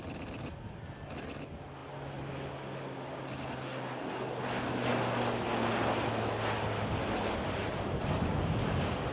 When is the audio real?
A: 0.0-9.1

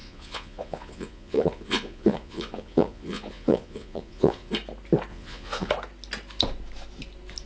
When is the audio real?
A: 4.5-5.1; 5.7-7.5

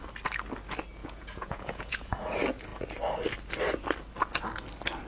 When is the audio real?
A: 0.0-1.0; 2.1-5.1